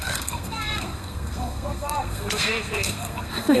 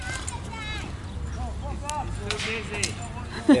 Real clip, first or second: second